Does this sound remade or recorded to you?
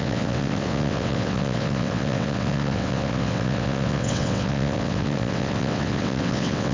remade